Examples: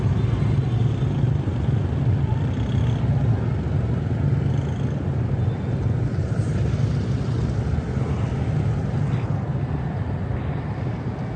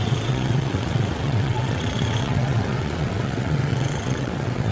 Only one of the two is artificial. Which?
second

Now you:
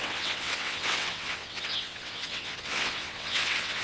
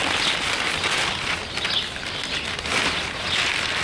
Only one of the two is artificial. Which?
first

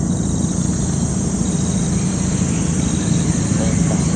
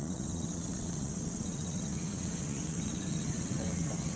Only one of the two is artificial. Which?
second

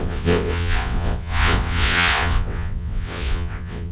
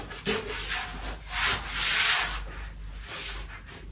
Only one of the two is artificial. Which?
first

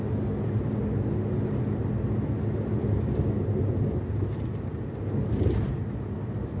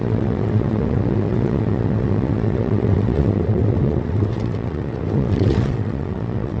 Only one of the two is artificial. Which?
second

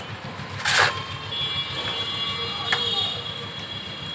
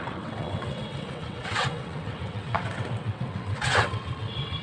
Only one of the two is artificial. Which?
second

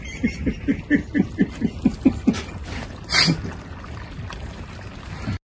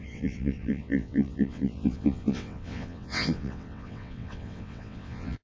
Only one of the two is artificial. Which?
second